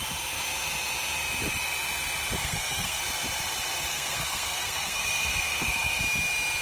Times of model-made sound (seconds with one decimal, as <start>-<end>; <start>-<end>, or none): 2.4-3.0; 3.9-6.0